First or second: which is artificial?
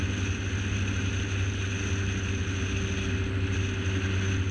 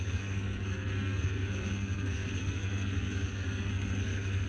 second